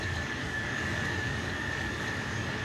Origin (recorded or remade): remade